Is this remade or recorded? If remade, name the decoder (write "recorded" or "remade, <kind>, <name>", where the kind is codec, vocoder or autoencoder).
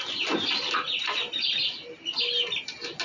recorded